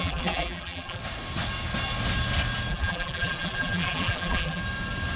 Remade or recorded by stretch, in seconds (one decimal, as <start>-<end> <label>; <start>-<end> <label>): 0.0-1.0 remade; 1.0-2.7 recorded; 2.7-4.6 remade; 4.6-5.2 recorded